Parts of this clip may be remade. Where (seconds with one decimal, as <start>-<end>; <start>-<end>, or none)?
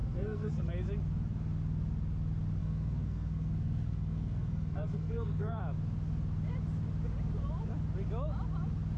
0.0-0.7; 2.6-5.6